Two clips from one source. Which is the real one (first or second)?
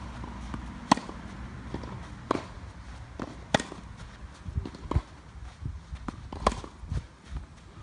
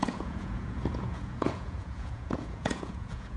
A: first